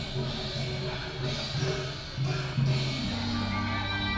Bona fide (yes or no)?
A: yes